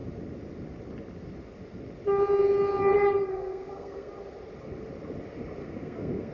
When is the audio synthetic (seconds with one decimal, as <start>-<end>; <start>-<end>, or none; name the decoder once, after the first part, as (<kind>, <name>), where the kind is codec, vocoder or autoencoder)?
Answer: 3.3-4.1 (codec, SNAC); 5.6-6.3